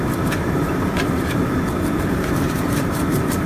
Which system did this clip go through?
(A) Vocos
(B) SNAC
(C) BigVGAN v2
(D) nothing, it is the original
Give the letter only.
C